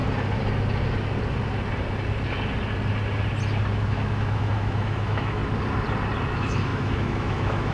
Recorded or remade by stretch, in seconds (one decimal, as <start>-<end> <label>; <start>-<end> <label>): 0.0-3.7 recorded; 3.7-5.4 remade; 5.4-6.3 recorded; 6.3-7.7 remade